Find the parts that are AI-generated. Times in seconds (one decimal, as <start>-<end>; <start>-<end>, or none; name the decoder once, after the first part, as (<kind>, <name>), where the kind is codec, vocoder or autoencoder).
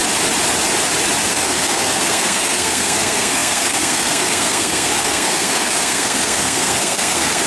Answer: 1.3-7.5 (codec, SNAC)